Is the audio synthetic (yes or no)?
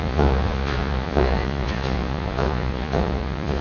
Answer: yes